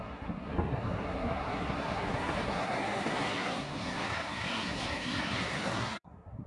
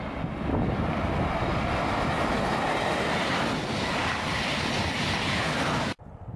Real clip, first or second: second